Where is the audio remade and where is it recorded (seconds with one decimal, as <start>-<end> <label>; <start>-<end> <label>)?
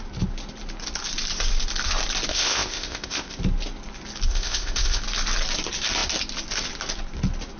0.0-2.3 recorded; 2.3-3.4 remade; 3.4-4.3 recorded; 4.3-5.0 remade; 5.0-7.6 recorded